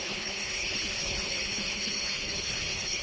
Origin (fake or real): fake